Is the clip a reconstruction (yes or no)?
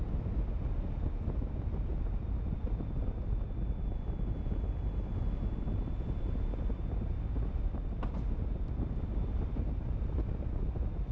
no